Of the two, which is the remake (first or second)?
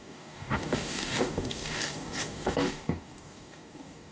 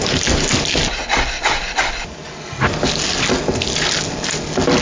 first